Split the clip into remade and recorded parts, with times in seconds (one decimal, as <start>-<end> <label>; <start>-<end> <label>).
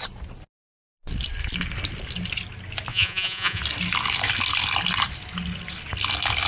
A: 0.0-2.9 recorded; 2.9-3.6 remade; 3.6-6.5 recorded